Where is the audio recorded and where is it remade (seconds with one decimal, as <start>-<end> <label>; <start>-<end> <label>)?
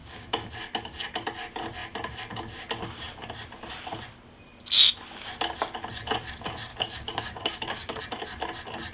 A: 0.0-0.5 remade; 0.5-6.7 recorded; 6.7-8.0 remade; 8.0-8.9 recorded